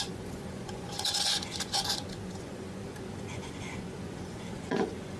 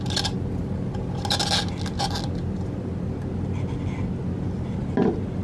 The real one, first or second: second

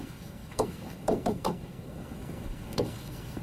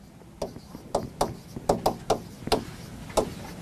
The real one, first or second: second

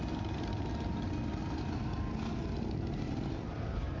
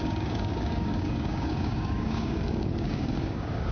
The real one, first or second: first